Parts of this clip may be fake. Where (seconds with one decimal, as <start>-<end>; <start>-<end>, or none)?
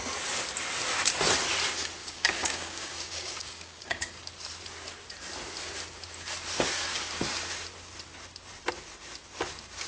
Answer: 2.0-4.3